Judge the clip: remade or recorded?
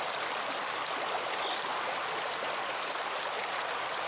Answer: recorded